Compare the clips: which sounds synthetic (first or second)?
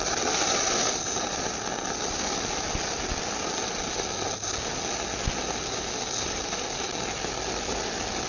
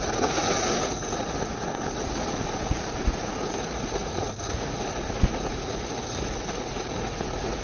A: second